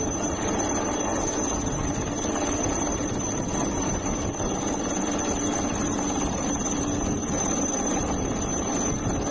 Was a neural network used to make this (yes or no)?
no